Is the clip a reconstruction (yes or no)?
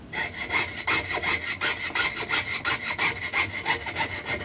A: no